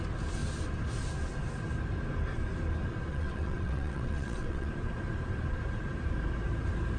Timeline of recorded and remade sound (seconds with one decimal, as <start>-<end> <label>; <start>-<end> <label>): 0.0-3.1 recorded; 3.1-4.7 remade; 4.7-7.0 recorded